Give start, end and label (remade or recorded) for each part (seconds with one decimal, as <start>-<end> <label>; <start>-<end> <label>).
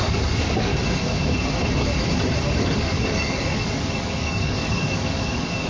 0.0-0.7 remade; 0.7-2.8 recorded; 2.8-5.7 remade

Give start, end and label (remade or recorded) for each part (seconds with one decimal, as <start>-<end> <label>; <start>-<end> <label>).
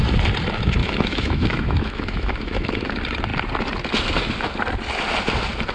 0.0-0.8 recorded; 0.8-2.9 remade; 2.9-5.7 recorded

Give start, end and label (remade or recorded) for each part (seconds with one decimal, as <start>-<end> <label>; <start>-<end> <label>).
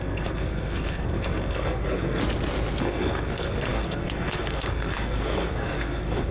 0.0-2.2 remade; 2.2-2.8 recorded; 2.8-6.3 remade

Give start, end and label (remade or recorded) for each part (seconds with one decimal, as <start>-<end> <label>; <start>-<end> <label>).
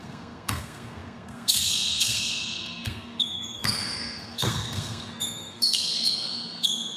0.0-7.0 remade